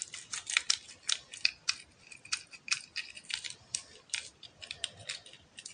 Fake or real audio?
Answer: real